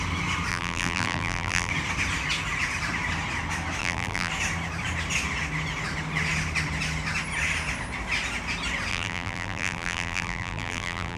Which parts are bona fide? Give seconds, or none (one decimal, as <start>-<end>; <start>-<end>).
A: 0.0-0.5; 1.7-3.8; 4.3-8.9